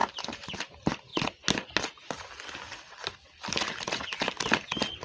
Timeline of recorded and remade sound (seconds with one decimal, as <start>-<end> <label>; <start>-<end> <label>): 0.0-5.0 recorded